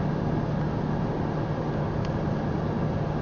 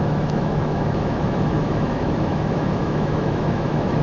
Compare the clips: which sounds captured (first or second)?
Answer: first